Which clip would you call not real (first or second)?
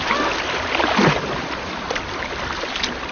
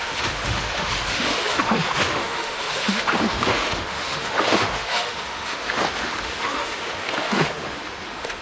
second